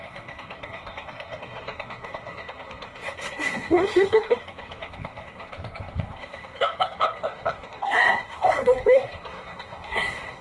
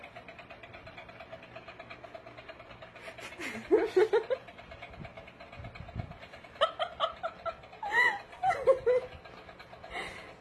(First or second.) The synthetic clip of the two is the first